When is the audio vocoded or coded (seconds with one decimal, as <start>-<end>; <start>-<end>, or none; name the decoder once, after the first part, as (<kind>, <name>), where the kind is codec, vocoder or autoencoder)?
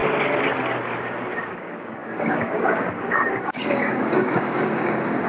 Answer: 1.5-5.3 (codec, DAC)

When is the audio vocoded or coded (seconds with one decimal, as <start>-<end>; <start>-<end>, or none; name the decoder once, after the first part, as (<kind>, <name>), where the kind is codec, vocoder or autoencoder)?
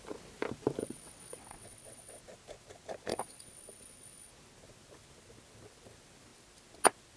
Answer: 0.8-2.2 (vocoder, WaveNeXt); 3.1-4.3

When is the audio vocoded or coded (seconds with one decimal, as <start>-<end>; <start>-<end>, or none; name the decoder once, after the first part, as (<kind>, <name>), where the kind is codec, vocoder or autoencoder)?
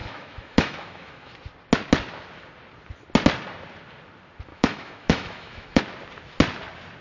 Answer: 0.0-1.3 (autoencoder, DAC-VAE); 4.5-5.8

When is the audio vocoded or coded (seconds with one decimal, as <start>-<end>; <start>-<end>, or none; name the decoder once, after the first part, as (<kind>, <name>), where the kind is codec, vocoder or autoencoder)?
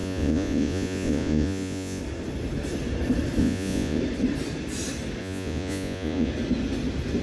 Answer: 0.0-2.0 (vocoder, Vocos); 3.4-4.0; 5.2-6.3